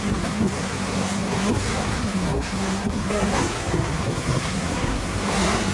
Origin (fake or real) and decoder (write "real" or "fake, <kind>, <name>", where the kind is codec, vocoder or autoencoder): fake, codec, SNAC